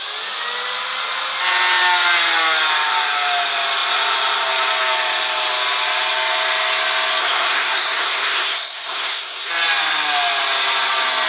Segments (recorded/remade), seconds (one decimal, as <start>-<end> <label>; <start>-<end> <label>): 0.0-7.2 recorded; 7.2-9.5 remade; 9.5-11.3 recorded